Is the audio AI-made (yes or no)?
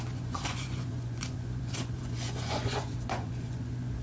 yes